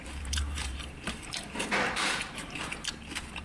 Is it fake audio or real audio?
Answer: fake